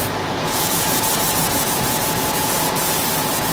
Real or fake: fake